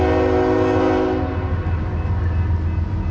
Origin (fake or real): real